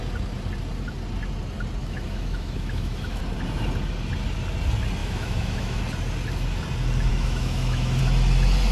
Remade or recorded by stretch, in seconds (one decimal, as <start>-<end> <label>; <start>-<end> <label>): 0.0-1.8 recorded; 1.8-3.2 remade; 3.2-5.0 recorded; 5.0-5.8 remade; 5.8-7.1 recorded; 7.1-8.0 remade; 8.0-8.7 recorded